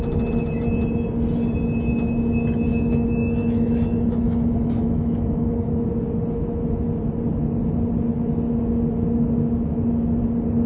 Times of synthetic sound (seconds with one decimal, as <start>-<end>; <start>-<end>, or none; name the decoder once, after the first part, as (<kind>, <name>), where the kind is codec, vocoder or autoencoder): 2.7-5.7 (autoencoder, DAC-VAE)